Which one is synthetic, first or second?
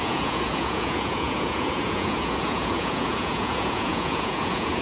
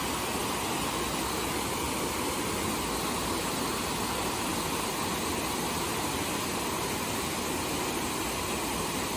first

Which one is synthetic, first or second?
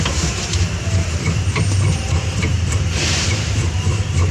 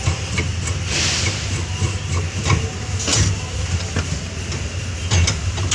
first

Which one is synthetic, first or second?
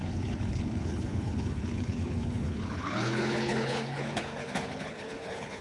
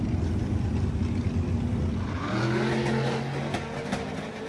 first